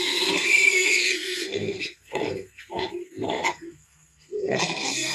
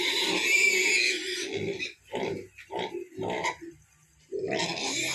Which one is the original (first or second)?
second